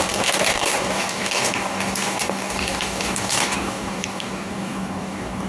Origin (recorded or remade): remade